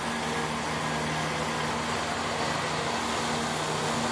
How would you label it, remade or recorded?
recorded